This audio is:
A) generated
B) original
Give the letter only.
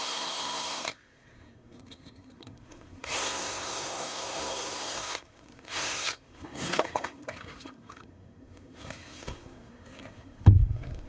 A